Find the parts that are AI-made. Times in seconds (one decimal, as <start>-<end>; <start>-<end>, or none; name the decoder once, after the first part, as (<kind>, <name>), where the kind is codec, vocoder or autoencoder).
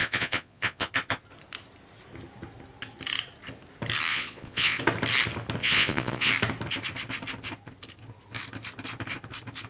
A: 0.0-0.9 (vocoder, Vocos); 4.1-4.8; 5.6-6.3